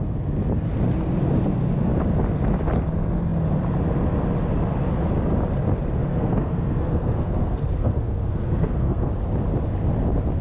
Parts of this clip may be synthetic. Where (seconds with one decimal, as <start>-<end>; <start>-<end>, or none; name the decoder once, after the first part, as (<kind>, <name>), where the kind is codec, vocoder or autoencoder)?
6.0-9.1 (codec, SNAC)